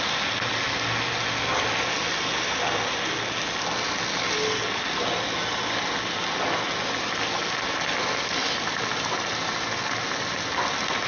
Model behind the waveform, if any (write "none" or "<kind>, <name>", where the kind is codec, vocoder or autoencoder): none